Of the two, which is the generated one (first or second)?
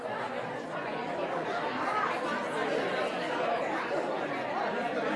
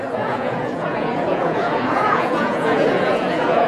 second